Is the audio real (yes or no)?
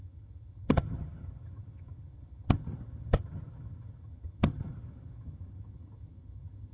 no